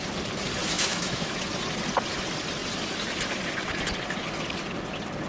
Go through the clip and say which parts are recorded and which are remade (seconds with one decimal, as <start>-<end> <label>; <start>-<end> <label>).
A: 0.0-0.6 recorded; 0.6-1.4 remade; 1.4-5.3 recorded